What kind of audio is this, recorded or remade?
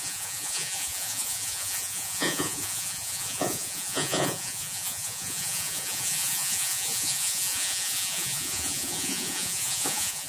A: remade